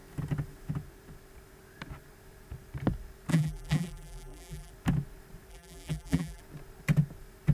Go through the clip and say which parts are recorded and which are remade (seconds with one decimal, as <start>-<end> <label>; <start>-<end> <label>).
0.0-3.3 recorded; 3.3-4.7 remade; 4.7-5.5 recorded; 5.5-6.4 remade; 6.4-7.5 recorded